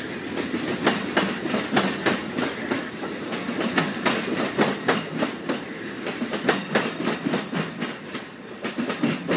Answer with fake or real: real